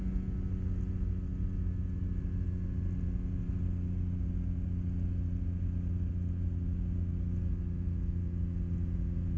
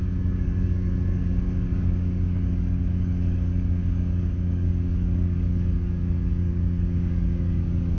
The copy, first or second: second